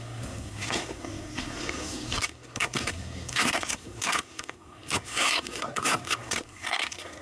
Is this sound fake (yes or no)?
yes